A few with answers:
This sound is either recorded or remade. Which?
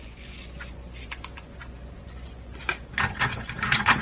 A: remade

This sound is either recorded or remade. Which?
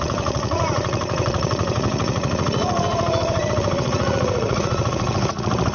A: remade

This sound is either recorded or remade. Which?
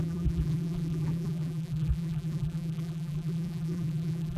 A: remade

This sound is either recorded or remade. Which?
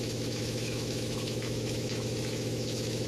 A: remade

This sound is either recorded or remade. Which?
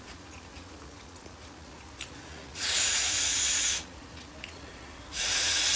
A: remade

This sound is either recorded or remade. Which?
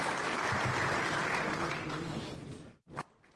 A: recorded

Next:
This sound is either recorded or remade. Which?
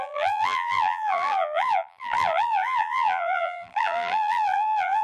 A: remade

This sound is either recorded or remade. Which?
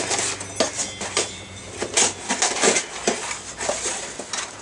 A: recorded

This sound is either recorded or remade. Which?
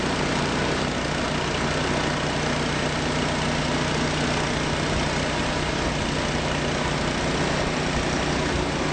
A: recorded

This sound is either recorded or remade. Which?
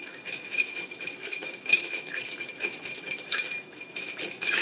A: remade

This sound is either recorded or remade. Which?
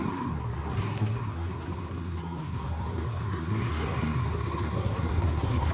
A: remade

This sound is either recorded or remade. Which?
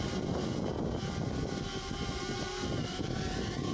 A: recorded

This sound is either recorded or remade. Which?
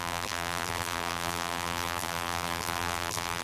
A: remade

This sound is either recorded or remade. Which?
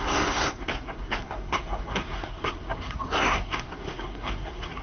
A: remade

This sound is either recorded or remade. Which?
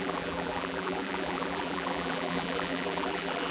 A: remade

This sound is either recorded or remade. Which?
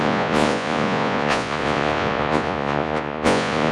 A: remade